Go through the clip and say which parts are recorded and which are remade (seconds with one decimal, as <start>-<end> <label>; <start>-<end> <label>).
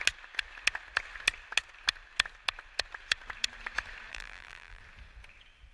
0.0-4.1 recorded; 4.1-4.8 remade; 4.8-5.7 recorded